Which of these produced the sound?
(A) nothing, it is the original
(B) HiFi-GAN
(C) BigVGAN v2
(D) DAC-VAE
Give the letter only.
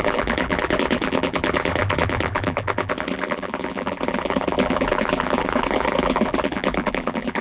C